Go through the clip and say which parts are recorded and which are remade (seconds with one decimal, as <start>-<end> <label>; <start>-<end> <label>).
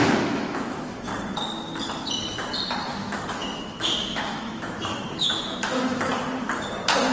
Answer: 0.0-1.1 remade; 1.1-2.9 recorded; 2.9-6.1 remade; 6.1-7.1 recorded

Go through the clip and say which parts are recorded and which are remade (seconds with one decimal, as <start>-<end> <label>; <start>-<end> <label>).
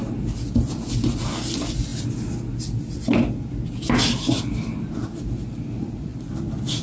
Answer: 0.0-1.1 recorded; 1.1-1.9 remade; 1.9-5.2 recorded; 5.2-6.8 remade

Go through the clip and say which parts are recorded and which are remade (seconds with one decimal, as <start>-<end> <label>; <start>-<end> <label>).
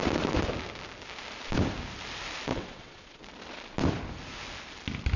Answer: 0.0-2.5 recorded; 2.5-3.2 remade; 3.2-5.2 recorded